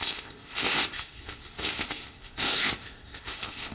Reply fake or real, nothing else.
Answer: fake